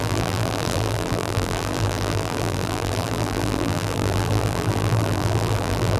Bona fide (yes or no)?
no